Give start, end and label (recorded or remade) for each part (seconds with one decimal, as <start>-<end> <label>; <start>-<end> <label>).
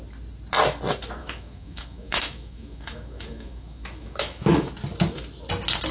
0.0-1.2 recorded; 1.2-4.7 remade; 4.7-5.9 recorded